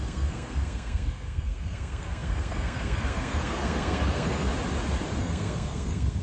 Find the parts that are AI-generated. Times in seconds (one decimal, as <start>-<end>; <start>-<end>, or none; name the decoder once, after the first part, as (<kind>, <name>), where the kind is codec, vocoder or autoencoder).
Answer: 0.0-4.5 (codec, SNAC); 5.2-6.2